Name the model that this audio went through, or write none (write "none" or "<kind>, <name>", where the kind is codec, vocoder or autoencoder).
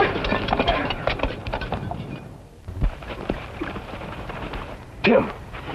vocoder, BigVGAN v2